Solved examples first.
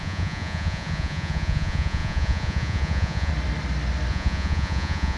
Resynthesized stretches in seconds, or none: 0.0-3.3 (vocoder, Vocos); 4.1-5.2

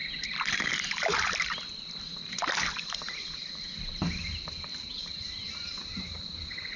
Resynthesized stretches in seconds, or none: none

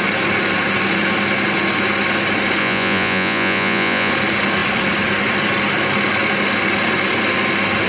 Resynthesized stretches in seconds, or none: 2.6-4.1 (vocoder, Vocos)

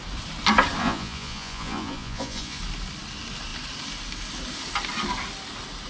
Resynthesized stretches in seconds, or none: 0.8-2.6 (vocoder, Vocos)

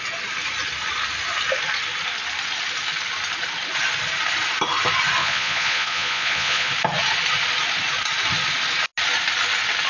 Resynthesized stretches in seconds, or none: 5.2-6.7 (vocoder, Vocos)

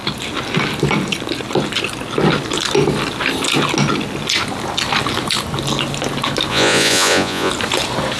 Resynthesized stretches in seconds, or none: 6.5-7.5 (vocoder, Vocos)